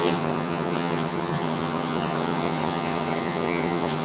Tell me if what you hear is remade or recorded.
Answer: remade